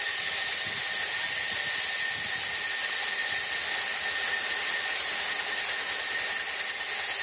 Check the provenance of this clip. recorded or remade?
recorded